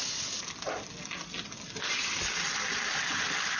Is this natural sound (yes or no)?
yes